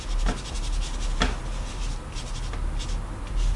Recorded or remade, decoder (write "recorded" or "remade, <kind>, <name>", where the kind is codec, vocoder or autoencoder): recorded